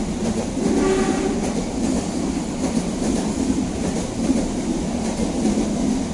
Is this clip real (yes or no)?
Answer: yes